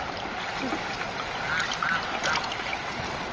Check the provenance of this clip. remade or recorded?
recorded